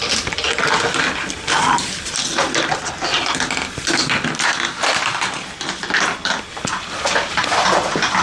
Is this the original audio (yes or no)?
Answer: yes